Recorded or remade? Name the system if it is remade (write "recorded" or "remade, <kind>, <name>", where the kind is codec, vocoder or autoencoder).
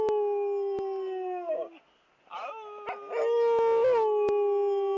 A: recorded